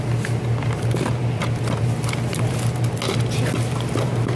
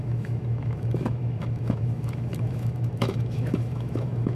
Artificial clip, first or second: second